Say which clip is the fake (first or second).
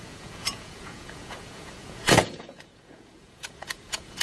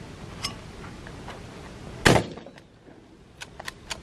first